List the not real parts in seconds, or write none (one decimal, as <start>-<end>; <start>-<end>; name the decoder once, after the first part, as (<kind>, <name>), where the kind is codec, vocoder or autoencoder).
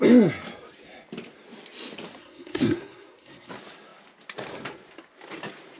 2.2-3.5 (codec, SNAC)